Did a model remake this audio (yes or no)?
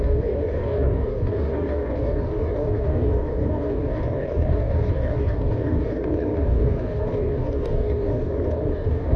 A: yes